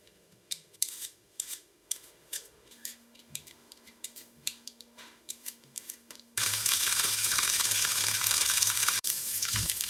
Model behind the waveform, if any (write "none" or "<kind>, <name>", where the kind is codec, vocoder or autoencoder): autoencoder, DAC-VAE